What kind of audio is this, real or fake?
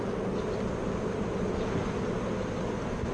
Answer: real